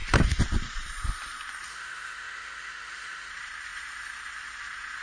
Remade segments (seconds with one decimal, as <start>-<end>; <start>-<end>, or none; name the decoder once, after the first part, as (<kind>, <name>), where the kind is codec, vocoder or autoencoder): 1.7-3.3 (autoencoder, DAC-VAE)